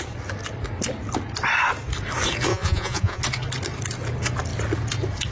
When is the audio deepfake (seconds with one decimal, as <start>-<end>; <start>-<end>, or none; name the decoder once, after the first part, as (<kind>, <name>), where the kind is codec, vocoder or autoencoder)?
2.5-3.2 (vocoder, Vocos)